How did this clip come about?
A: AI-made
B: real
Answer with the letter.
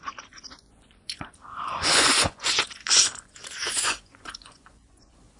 A